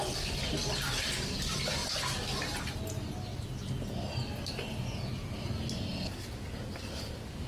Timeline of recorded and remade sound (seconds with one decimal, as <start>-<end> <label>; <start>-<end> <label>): 0.0-7.5 recorded